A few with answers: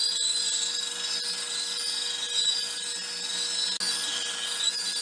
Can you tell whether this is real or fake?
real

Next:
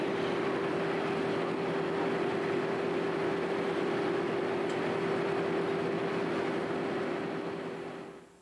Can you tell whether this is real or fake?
real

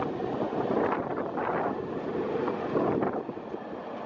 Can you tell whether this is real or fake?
real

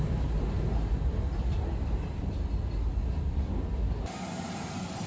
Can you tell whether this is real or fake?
real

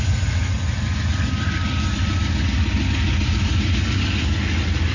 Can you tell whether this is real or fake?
real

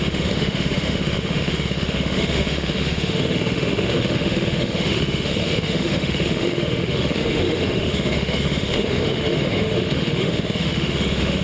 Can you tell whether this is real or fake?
fake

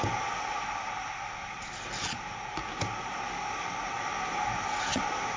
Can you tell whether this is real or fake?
real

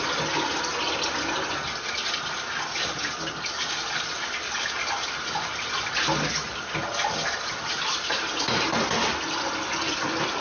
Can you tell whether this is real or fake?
real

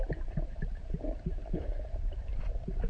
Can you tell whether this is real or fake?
fake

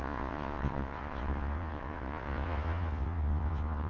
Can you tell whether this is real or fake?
fake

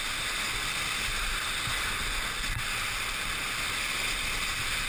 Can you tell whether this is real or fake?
real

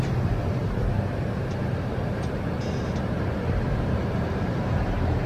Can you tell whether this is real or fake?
fake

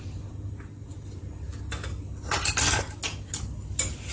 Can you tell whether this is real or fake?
real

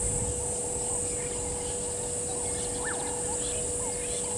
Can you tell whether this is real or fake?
real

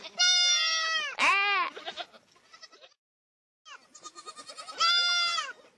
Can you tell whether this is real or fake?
real